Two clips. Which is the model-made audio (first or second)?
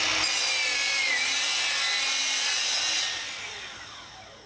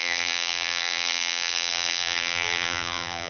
second